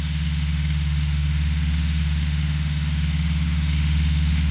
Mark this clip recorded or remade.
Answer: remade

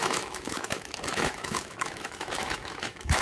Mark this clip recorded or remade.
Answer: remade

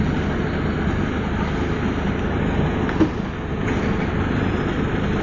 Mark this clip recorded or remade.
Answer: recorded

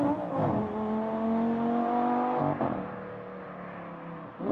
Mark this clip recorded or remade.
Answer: recorded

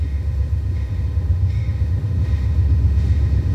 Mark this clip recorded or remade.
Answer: remade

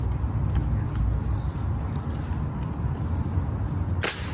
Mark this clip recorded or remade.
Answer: recorded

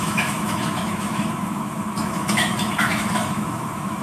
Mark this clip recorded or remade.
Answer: remade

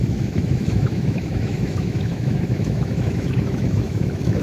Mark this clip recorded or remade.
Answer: remade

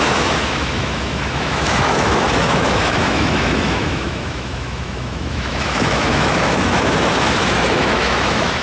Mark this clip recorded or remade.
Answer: remade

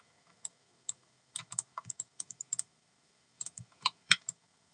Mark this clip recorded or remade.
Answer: remade